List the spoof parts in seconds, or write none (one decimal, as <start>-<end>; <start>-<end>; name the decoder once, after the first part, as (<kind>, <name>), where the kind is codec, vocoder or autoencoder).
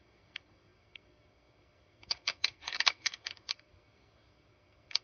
0.0-5.0 (codec, SNAC)